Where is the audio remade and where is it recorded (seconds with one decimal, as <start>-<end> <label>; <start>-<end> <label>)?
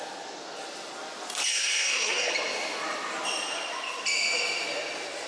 0.0-1.5 recorded; 1.5-2.3 remade; 2.3-5.3 recorded